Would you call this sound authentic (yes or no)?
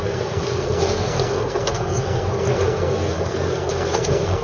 no